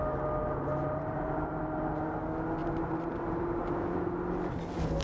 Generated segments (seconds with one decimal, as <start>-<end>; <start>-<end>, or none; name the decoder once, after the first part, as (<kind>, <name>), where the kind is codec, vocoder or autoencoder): 0.7-1.6 (vocoder, BigVGAN v2); 2.6-4.1